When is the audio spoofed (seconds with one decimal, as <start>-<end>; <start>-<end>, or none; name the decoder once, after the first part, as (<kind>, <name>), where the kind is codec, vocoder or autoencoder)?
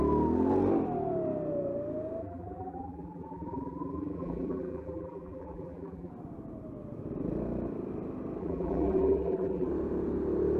2.2-6.1 (vocoder, BigVGAN v2); 8.4-9.7